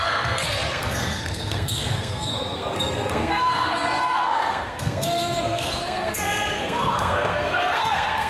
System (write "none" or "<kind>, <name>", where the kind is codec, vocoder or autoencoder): codec, SNAC